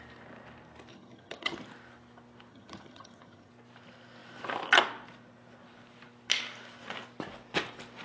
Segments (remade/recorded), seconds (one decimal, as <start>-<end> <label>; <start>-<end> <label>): 0.0-0.9 recorded; 0.9-1.6 remade; 1.6-2.5 recorded; 2.5-3.5 remade; 3.5-8.0 recorded